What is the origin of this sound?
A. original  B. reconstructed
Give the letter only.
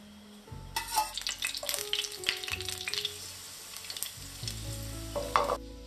A